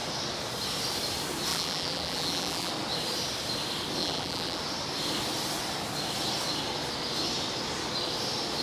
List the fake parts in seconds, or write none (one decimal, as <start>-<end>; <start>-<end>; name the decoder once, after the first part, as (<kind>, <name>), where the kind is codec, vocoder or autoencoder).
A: 1.5-2.7 (vocoder, BigVGAN v2); 4.0-4.6